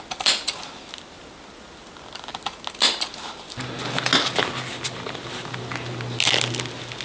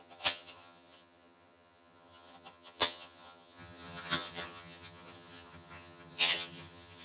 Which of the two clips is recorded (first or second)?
first